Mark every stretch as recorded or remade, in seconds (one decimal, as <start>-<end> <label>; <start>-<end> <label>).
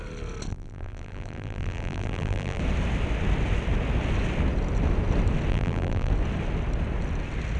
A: 0.0-0.5 recorded; 0.5-2.6 remade; 2.6-5.5 recorded; 5.5-6.1 remade; 6.1-7.6 recorded